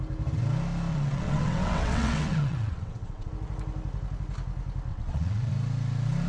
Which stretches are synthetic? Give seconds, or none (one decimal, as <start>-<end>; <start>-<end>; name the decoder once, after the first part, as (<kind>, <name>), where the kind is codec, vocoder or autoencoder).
0.9-3.3 (vocoder, WaveNeXt); 4.9-5.5